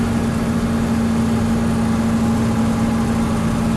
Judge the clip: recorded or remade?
recorded